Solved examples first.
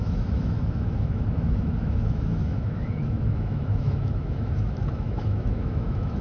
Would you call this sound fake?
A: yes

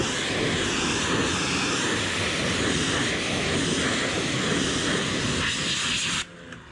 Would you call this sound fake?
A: no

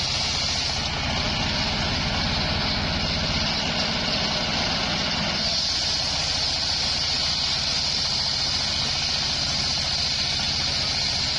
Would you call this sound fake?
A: no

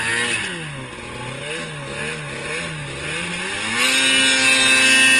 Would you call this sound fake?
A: no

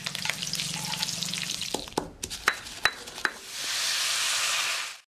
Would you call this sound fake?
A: no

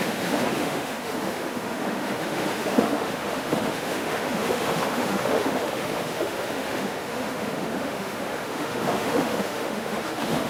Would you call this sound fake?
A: yes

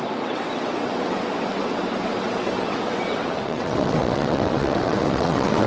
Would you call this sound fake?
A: yes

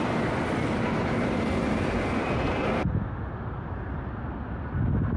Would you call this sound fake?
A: no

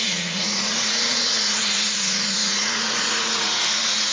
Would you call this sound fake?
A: yes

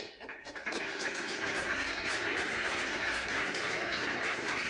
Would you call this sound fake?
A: yes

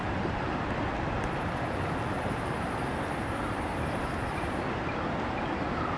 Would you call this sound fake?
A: no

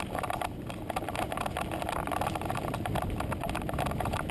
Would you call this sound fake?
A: no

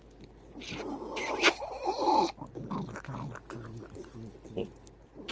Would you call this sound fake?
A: no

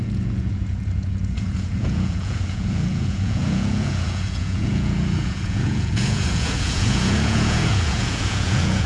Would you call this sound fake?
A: yes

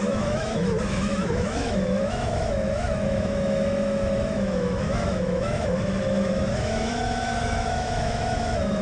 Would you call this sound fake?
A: yes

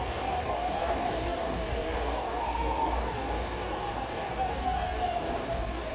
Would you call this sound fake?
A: yes